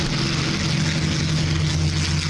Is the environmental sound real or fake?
real